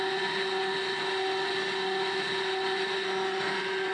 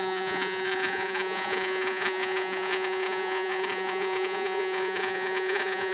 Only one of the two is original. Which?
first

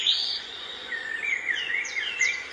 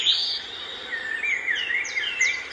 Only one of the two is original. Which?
second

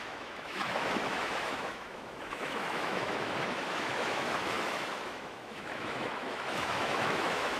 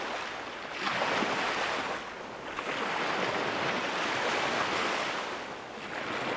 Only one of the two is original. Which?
second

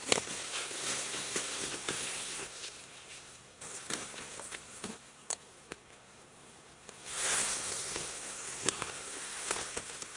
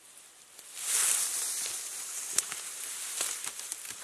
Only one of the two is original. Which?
second